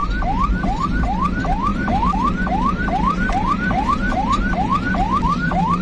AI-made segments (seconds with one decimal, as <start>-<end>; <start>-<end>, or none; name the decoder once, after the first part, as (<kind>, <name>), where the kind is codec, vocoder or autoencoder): 0.8-5.8 (vocoder, BigVGAN v2)